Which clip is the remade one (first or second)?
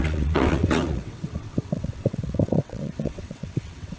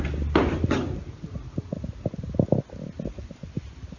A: first